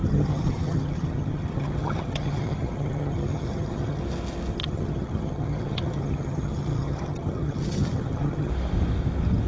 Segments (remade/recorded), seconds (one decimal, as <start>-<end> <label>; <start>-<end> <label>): 0.0-4.0 remade; 4.0-4.6 recorded; 4.6-8.5 remade; 8.5-9.5 recorded